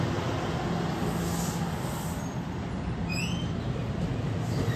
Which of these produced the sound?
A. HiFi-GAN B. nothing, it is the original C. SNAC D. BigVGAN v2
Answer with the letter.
B